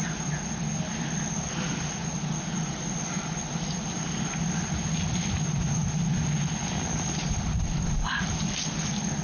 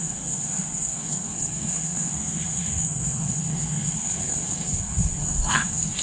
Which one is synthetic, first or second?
second